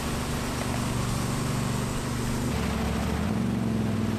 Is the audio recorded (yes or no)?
yes